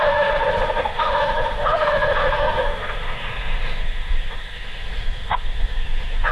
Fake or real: fake